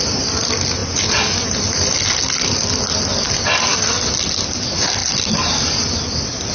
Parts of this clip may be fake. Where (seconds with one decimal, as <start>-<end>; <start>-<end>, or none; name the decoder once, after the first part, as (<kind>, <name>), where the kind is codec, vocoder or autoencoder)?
none